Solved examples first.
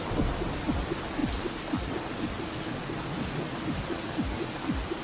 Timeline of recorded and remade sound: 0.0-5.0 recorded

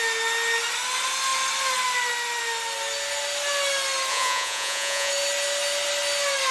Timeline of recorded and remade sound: 0.0-4.1 recorded; 4.1-5.1 remade; 5.1-6.5 recorded

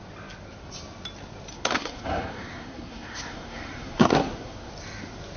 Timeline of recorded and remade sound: 0.0-1.5 recorded; 1.5-4.7 remade; 4.7-5.4 recorded

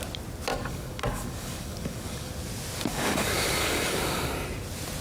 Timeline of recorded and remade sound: 0.0-0.5 recorded; 0.5-2.3 remade; 2.3-2.9 recorded; 2.9-4.3 remade; 4.3-5.0 recorded

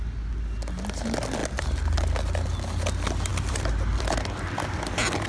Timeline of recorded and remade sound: 0.0-1.4 recorded; 1.4-2.1 remade; 2.1-3.3 recorded; 3.3-4.8 remade; 4.8-5.3 recorded

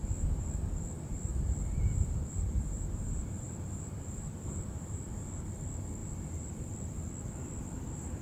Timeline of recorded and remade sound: 0.0-1.3 recorded; 1.3-5.4 remade; 5.4-6.0 recorded; 6.0-6.7 remade; 6.7-8.2 recorded